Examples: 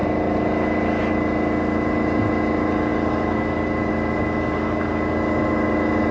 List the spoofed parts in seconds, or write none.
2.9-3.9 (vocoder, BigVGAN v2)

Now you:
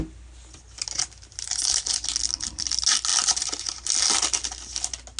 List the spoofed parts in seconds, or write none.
none

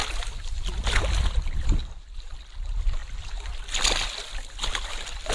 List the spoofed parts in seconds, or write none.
0.0-3.0 (vocoder, BigVGAN v2); 4.7-5.3

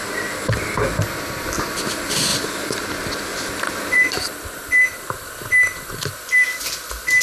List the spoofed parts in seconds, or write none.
2.3-6.6 (vocoder, BigVGAN v2)